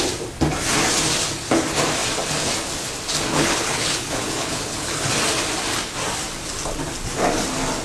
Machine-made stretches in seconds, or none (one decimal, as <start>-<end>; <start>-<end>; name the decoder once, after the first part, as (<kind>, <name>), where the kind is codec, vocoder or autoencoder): 3.3-5.1 (codec, HILCodec)